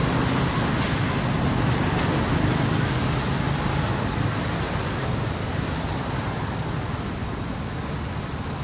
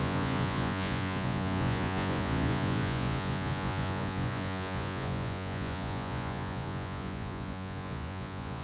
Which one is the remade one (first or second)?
second